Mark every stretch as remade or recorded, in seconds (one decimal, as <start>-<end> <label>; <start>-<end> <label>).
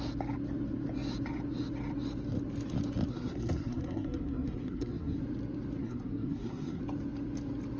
0.0-3.1 recorded; 3.1-5.2 remade; 5.2-5.8 recorded; 5.8-6.8 remade; 6.8-7.8 recorded